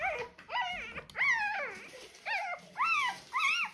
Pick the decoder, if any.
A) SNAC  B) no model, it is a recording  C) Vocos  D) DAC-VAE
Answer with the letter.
B